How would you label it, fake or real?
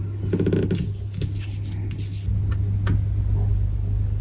real